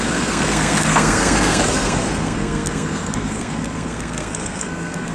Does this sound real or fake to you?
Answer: fake